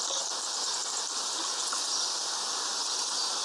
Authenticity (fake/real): real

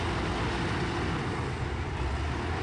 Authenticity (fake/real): real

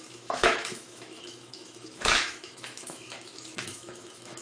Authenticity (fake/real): fake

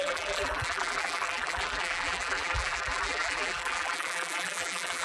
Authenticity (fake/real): fake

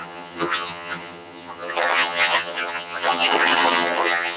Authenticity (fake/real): fake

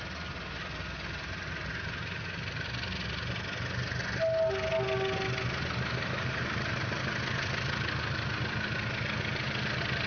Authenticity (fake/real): real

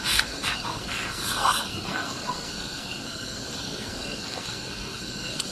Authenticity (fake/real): fake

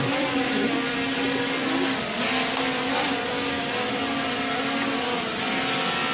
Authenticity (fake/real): real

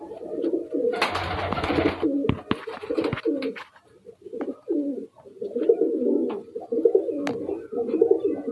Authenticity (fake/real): real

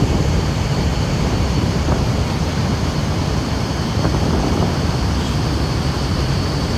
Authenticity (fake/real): fake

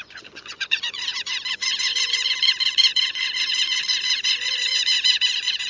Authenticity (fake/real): fake